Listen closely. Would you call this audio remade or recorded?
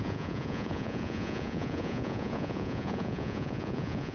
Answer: remade